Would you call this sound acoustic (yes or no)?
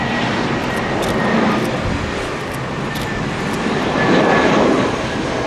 yes